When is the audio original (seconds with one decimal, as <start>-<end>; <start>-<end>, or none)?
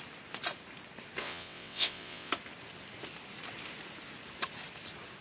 0.0-1.2; 2.3-5.2